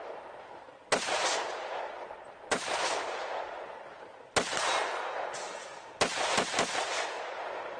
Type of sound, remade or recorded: recorded